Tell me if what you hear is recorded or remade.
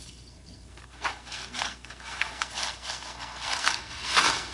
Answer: remade